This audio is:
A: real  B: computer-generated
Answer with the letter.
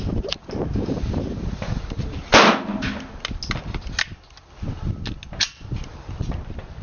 A